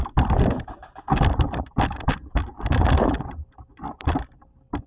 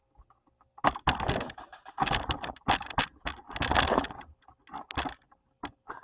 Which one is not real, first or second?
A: first